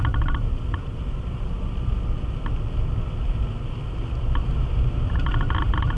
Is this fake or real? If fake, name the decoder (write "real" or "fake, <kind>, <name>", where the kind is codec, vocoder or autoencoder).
real